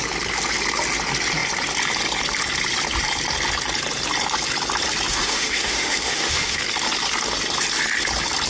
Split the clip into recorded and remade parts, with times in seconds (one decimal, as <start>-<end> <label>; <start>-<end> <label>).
0.0-5.1 recorded; 5.1-6.6 remade; 6.6-8.5 recorded